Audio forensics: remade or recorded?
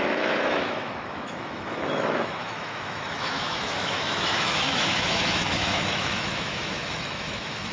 remade